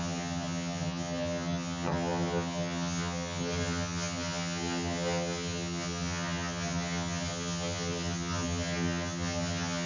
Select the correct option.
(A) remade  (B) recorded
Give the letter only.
A